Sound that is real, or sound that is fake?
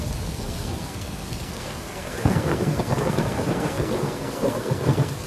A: fake